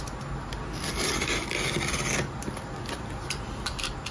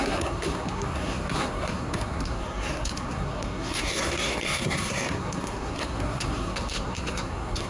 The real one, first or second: first